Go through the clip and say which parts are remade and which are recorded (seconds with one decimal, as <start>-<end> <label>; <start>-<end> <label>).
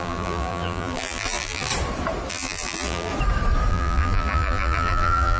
0.0-1.7 remade; 1.7-2.3 recorded; 2.3-3.1 remade; 3.1-3.7 recorded; 3.7-5.4 remade